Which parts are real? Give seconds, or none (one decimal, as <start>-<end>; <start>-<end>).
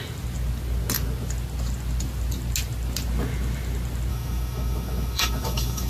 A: 0.0-4.1